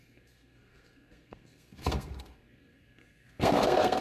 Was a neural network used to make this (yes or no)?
yes